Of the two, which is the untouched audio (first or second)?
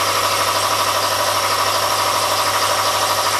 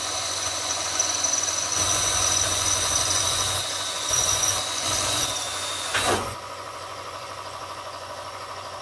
first